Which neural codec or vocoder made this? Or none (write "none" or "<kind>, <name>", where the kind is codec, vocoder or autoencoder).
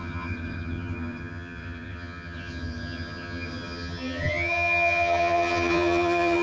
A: vocoder, HiFi-GAN